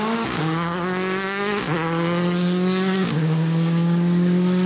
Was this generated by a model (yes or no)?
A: yes